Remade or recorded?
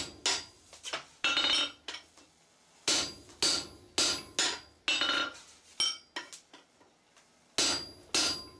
recorded